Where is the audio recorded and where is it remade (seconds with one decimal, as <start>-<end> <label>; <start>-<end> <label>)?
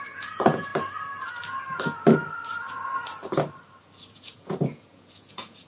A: 0.0-0.7 remade; 0.7-4.1 recorded; 4.1-5.7 remade